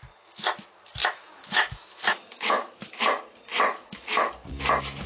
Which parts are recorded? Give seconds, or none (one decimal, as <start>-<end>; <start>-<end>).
0.0-1.0; 3.1-3.5; 4.3-5.1